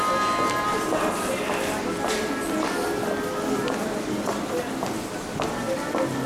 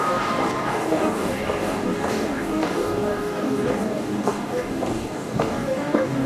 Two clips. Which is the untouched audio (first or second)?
first